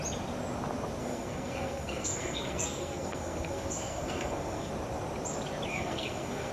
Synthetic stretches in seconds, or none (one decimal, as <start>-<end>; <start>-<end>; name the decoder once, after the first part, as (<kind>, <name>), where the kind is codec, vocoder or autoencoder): 1.0-4.7 (codec, SNAC); 5.7-6.5